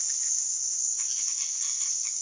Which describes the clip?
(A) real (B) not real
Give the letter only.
B